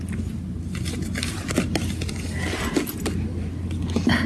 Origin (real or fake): real